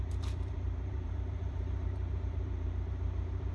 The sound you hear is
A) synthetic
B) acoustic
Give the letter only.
A